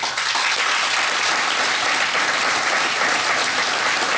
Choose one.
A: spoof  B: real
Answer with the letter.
A